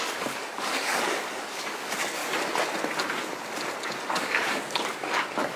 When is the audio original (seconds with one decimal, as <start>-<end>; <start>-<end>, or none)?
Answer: 2.2-4.1